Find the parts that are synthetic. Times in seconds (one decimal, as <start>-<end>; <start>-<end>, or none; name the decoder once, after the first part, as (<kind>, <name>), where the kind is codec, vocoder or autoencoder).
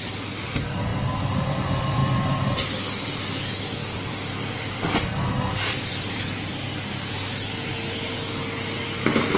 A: 0.0-0.9 (vocoder, BigVGAN v2); 1.4-2.0; 3.2-6.5; 8.4-9.4